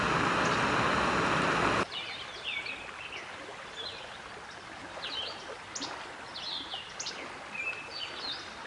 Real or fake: real